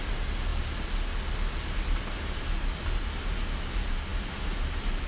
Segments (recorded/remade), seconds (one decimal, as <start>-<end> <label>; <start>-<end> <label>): 0.0-5.1 recorded